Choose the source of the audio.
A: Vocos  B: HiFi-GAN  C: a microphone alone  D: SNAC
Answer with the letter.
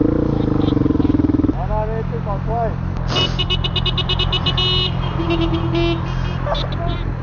C